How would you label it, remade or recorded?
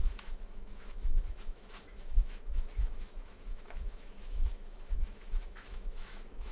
remade